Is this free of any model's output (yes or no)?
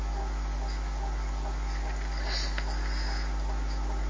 yes